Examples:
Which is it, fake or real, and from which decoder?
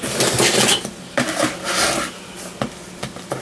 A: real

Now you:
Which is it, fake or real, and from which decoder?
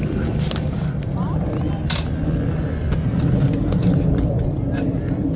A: real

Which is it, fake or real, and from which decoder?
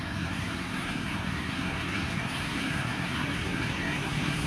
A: fake, codec, SNAC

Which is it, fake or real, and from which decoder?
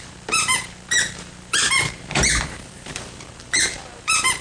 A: fake, vocoder, BigVGAN v2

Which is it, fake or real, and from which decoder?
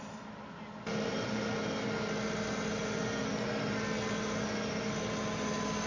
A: real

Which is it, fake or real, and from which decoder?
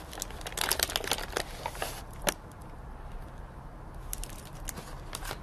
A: real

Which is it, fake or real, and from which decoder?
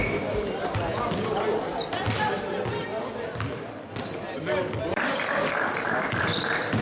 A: real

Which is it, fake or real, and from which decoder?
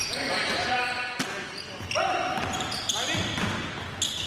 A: real